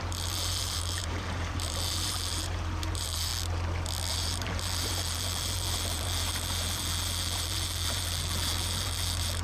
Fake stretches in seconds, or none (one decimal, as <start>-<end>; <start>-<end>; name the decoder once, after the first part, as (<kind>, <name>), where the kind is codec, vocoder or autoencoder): 0.0-3.3 (vocoder, BigVGAN v2); 4.1-9.4